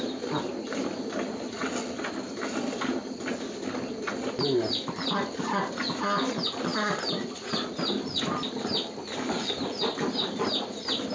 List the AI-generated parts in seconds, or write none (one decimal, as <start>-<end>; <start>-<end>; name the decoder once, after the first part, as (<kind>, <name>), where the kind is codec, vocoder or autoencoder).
none